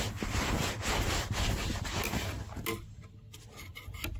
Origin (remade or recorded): recorded